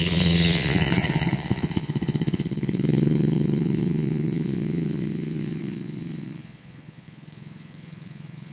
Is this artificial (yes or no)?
yes